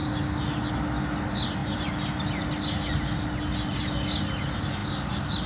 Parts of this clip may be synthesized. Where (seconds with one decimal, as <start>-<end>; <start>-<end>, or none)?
none